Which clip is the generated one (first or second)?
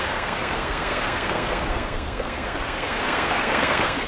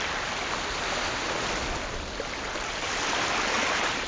first